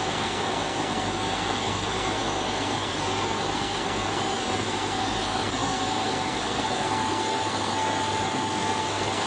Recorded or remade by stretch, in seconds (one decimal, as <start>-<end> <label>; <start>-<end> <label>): 0.0-9.3 remade